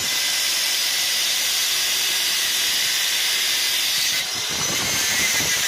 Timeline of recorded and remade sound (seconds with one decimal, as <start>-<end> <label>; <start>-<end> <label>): 0.0-5.7 remade